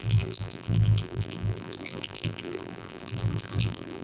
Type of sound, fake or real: fake